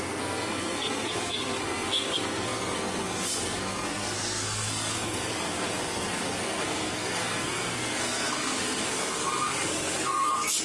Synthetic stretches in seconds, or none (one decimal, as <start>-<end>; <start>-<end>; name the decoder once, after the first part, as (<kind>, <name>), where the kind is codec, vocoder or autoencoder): 0.0-10.6 (codec, SNAC)